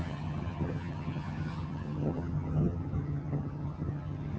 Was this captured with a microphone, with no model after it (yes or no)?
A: no